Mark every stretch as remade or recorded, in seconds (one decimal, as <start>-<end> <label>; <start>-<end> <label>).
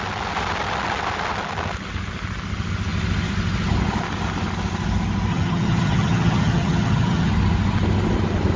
0.0-5.3 recorded; 5.3-7.3 remade; 7.3-8.6 recorded